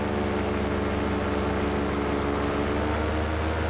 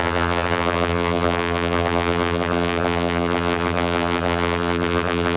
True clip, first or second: first